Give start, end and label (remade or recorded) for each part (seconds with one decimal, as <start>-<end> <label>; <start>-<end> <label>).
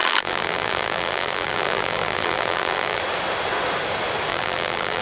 0.0-3.0 remade; 3.0-4.3 recorded; 4.3-5.0 remade